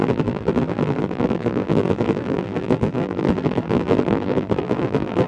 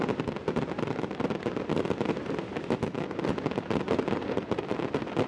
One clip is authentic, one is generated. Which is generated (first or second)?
first